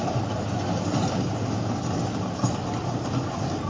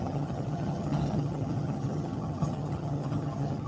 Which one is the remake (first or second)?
second